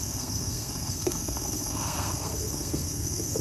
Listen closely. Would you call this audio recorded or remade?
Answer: remade